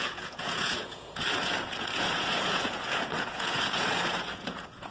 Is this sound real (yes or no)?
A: no